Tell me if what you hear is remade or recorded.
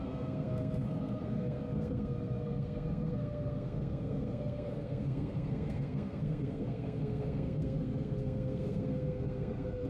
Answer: remade